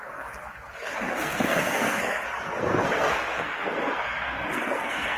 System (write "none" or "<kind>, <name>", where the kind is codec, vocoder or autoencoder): codec, SNAC